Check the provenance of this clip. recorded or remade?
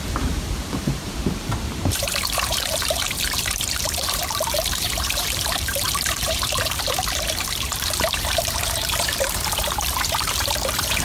remade